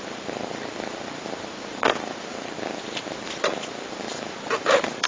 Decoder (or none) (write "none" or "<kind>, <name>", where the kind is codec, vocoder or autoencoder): vocoder, BigVGAN v2